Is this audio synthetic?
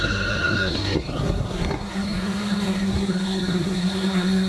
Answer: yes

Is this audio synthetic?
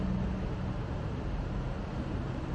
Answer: no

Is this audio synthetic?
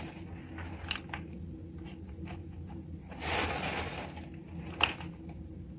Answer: no